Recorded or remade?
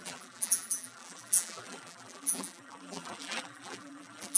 remade